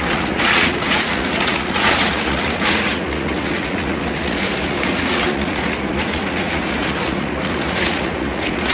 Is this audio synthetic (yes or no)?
yes